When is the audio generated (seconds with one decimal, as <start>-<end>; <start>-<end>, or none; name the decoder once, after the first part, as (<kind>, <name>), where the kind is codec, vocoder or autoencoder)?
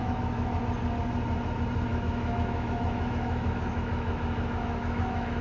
0.0-0.6 (autoencoder, DAC-VAE); 1.9-5.4